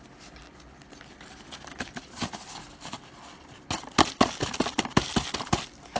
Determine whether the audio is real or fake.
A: real